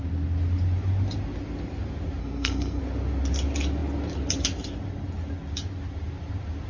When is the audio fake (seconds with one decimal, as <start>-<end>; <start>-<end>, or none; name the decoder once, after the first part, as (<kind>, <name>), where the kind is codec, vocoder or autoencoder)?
2.2-2.8 (codec, SNAC)